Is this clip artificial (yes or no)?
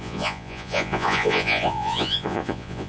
yes